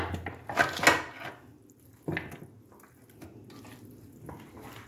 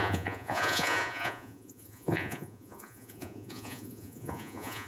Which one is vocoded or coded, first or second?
second